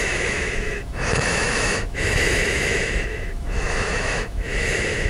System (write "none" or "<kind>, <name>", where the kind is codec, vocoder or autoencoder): autoencoder, DAC-VAE